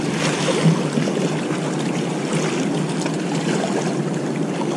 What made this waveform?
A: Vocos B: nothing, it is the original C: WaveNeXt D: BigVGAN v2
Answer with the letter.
B